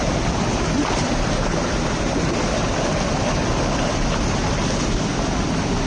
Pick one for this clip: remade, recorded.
recorded